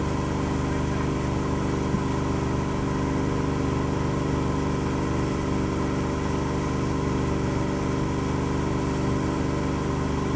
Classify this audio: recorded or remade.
recorded